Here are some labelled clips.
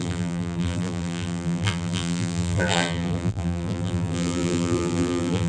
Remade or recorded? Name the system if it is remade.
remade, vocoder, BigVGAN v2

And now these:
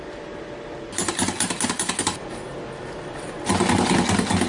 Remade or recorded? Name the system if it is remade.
recorded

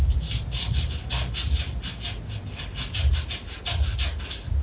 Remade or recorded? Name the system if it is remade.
recorded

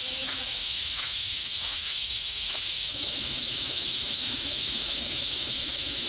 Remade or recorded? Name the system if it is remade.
remade, autoencoder, DAC-VAE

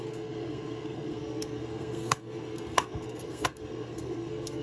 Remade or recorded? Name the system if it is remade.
remade, codec, SNAC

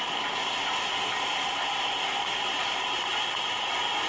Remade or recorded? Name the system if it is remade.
recorded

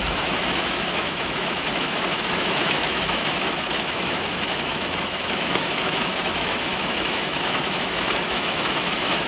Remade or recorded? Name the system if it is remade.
remade, autoencoder, DAC-VAE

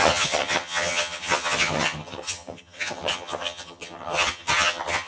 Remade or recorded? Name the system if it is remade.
remade, vocoder, HiFi-GAN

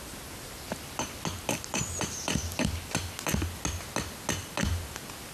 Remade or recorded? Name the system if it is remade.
recorded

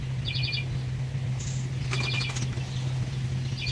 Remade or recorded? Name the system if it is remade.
recorded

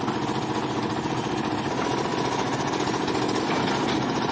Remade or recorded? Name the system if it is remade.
recorded